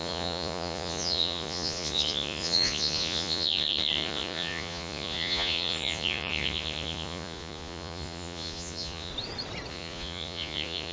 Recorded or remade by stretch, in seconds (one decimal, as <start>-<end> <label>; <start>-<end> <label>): 0.0-9.1 remade; 9.1-9.7 recorded; 9.7-10.9 remade